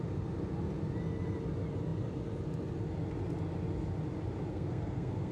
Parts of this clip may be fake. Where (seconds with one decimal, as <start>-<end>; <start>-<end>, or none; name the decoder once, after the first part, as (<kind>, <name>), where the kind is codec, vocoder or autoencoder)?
4.5-5.3 (codec, SNAC)